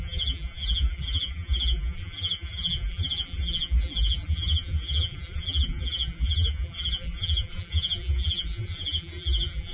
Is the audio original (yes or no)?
no